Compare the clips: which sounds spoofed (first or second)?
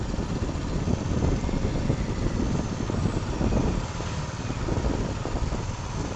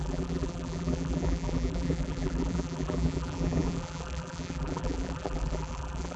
second